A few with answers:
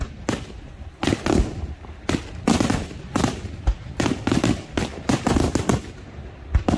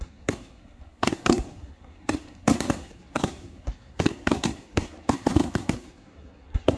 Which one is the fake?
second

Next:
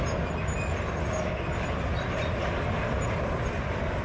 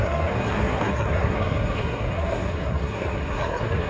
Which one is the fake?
second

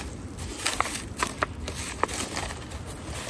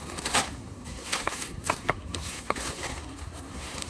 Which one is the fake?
second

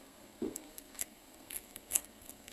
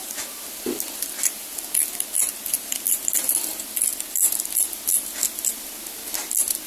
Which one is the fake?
first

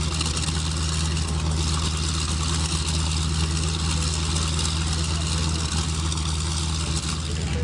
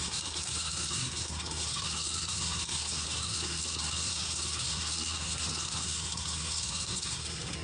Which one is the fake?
second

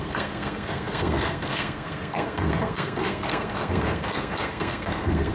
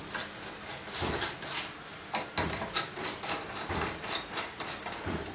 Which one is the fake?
first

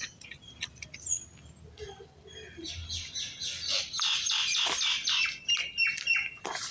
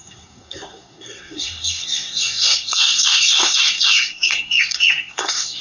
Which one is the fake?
second